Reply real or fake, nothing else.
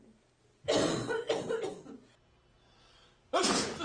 real